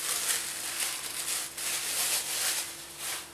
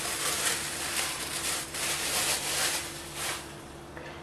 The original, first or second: first